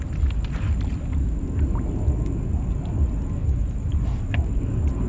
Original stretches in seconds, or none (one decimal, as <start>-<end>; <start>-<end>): 0.0-5.1